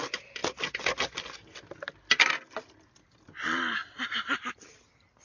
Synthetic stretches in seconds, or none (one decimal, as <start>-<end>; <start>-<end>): none